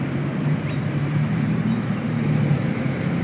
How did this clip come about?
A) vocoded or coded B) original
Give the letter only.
A